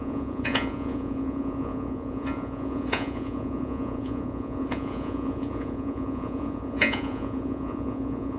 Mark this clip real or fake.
fake